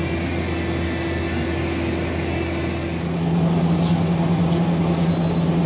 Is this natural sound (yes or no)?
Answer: yes